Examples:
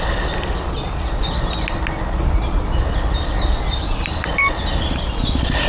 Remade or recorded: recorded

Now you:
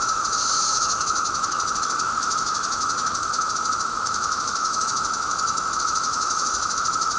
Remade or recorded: remade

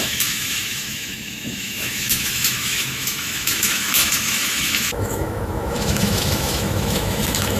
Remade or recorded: remade